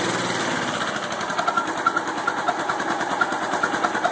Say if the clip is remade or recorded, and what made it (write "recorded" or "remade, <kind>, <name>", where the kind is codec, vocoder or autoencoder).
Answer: recorded